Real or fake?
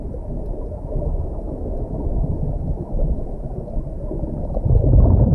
fake